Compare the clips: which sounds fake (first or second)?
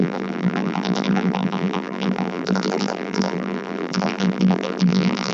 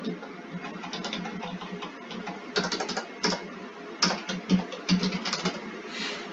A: first